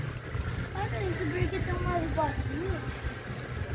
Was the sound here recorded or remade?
recorded